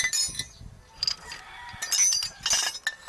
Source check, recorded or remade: recorded